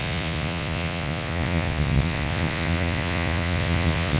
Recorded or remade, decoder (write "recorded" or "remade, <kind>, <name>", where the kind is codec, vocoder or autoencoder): remade, vocoder, Vocos